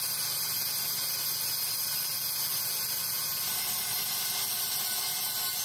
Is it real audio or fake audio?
real